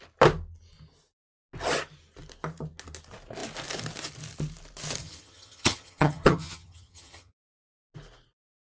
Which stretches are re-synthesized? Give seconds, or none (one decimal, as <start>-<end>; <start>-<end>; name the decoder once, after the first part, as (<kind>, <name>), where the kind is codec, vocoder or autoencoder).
5.0-7.3 (vocoder, HiFi-GAN)